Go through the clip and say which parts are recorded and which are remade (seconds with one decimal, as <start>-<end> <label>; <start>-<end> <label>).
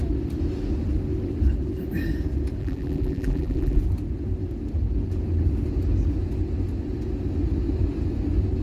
0.0-2.6 recorded; 2.6-3.8 remade; 3.8-8.6 recorded